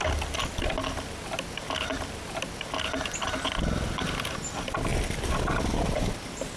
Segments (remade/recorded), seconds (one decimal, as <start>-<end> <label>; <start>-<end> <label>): 0.0-6.6 recorded